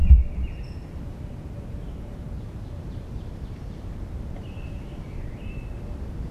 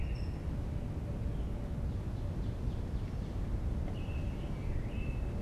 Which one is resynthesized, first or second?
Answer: first